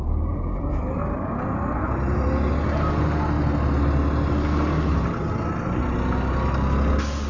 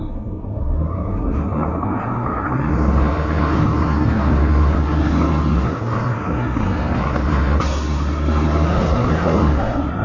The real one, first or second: first